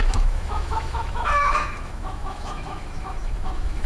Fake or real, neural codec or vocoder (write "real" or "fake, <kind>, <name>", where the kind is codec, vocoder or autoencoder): fake, autoencoder, DAC-VAE